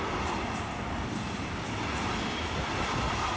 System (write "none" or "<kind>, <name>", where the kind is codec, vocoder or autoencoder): none